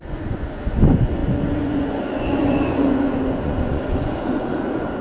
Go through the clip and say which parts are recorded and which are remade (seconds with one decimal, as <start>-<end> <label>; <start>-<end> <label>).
0.0-5.0 remade